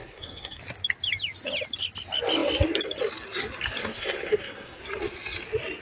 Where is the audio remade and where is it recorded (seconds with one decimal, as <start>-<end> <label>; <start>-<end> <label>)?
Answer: 0.0-0.6 remade; 0.6-3.8 recorded; 3.8-4.8 remade; 4.8-5.8 recorded